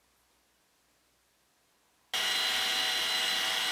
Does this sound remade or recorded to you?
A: recorded